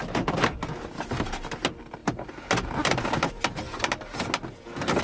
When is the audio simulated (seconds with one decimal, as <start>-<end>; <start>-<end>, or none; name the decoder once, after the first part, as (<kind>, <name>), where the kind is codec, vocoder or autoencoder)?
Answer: none